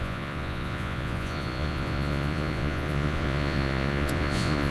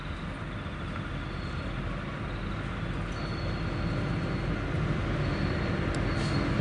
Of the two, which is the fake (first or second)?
first